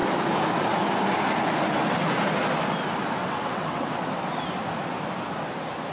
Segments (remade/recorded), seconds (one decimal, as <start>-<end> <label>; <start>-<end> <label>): 0.0-3.2 recorded; 3.2-3.9 remade; 3.9-5.9 recorded

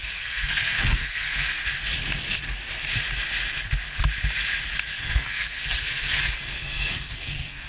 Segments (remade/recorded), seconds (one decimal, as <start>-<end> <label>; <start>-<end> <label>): 0.0-1.6 remade; 1.6-5.0 recorded; 5.0-7.7 remade